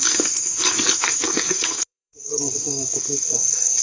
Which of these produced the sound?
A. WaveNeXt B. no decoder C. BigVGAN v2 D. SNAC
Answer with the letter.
D